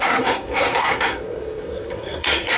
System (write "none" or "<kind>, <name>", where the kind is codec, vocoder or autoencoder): codec, SNAC